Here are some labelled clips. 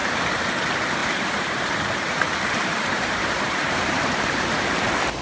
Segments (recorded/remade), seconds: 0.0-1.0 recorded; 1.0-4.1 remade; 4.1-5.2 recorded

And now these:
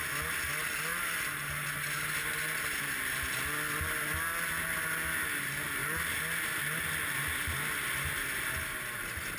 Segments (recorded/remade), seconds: 0.0-9.4 recorded

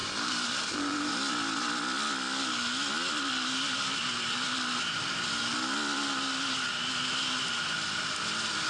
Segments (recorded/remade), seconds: 0.0-1.1 remade; 1.1-8.7 recorded

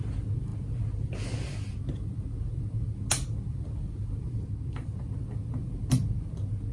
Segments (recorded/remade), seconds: 0.0-6.7 recorded

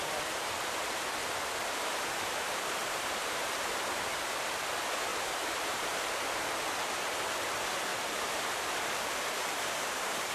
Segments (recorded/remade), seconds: 0.0-1.2 recorded; 1.2-3.6 remade; 3.6-5.1 recorded; 5.1-6.2 remade; 6.2-7.9 recorded; 7.9-10.3 remade

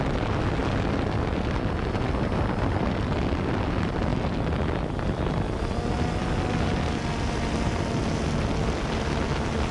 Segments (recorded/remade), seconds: 0.0-9.7 recorded

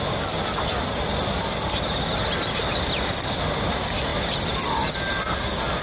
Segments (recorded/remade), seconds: 0.0-5.8 recorded

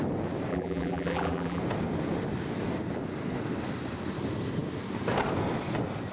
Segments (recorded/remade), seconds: 0.0-0.5 recorded; 0.5-1.6 remade; 1.6-6.1 recorded